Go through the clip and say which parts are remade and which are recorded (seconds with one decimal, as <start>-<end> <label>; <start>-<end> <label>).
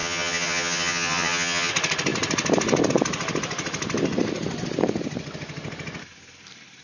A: 0.0-1.7 remade; 1.7-6.8 recorded